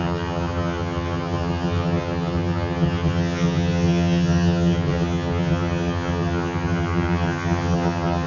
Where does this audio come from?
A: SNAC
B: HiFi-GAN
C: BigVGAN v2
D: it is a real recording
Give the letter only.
B